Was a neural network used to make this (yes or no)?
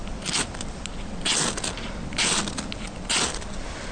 no